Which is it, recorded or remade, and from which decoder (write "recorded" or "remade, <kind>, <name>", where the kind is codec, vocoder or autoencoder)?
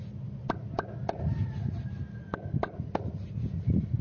recorded